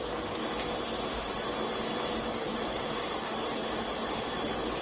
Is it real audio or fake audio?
real